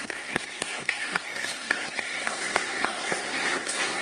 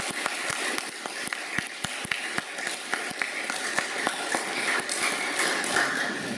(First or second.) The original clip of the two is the second